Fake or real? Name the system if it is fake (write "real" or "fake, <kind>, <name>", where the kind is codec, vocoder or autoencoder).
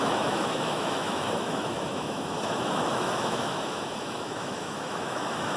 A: fake, autoencoder, DAC-VAE